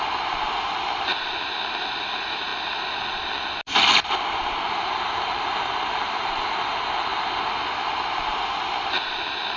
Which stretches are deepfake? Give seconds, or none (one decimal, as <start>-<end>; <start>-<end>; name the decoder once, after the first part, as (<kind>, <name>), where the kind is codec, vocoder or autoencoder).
none